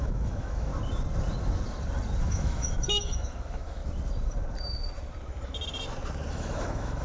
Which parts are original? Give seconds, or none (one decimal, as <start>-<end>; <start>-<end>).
0.7-2.2; 3.8-6.3